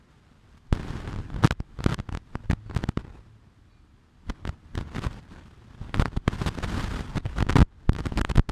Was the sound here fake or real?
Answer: real